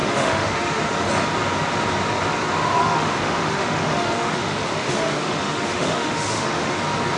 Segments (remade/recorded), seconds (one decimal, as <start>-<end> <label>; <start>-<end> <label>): 0.0-1.1 remade; 1.1-2.8 recorded; 2.8-6.8 remade; 6.8-7.2 recorded